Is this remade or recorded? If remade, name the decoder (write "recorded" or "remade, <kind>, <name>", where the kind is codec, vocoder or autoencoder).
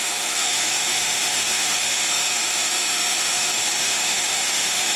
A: remade, autoencoder, DAC-VAE